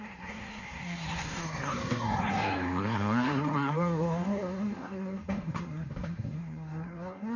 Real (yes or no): no